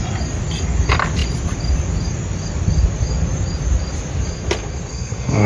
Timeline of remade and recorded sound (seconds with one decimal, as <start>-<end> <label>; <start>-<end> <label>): 0.0-4.9 recorded; 4.9-5.5 remade